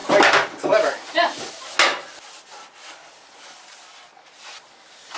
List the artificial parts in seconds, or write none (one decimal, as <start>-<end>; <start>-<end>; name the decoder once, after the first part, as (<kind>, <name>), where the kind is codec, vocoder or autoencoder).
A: none